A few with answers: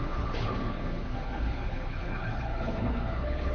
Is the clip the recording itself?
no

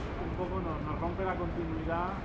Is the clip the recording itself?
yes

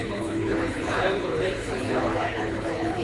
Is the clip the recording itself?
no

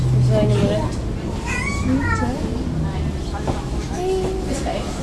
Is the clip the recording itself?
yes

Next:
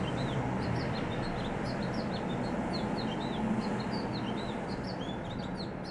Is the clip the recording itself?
yes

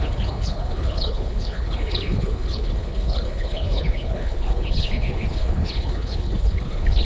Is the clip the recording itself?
no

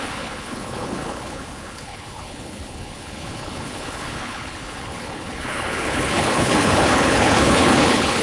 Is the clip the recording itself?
no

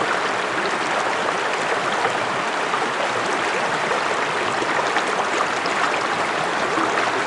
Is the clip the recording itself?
yes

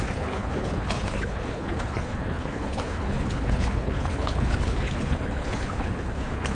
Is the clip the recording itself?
no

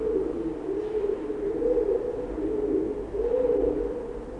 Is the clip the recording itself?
yes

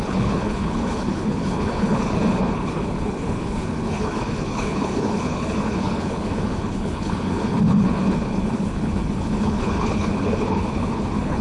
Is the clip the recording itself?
no